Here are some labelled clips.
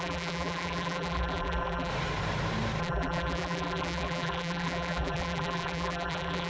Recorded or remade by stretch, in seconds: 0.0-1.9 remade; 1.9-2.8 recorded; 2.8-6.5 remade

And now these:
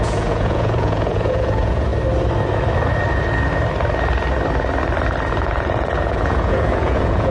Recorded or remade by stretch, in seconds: 0.0-1.9 remade; 1.9-5.3 recorded; 5.3-7.3 remade